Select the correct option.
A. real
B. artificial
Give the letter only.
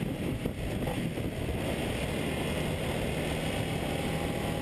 A